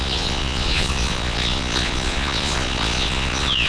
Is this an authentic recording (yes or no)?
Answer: no